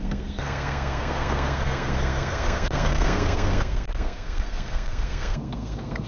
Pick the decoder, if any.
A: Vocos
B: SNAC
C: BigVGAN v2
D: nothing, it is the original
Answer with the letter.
B